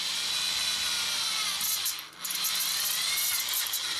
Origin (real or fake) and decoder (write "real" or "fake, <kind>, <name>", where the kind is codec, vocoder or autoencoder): real